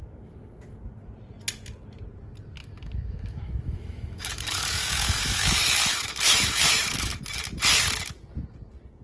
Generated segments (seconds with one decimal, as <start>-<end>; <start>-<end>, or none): 2.6-7.2